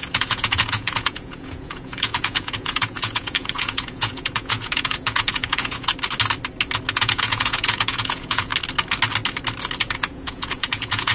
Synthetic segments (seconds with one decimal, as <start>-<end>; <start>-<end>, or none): 0.0-5.9; 6.9-8.5; 9.8-11.1